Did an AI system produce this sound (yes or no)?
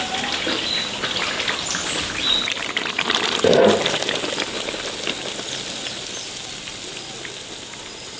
no